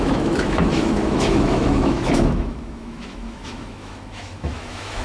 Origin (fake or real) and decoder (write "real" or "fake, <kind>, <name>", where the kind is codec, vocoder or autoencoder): fake, autoencoder, DAC-VAE